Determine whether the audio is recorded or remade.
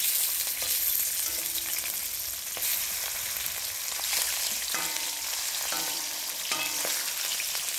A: recorded